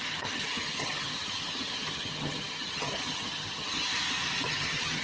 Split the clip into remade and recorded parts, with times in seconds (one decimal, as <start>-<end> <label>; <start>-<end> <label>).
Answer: 0.0-3.9 remade; 3.9-4.5 recorded; 4.5-5.0 remade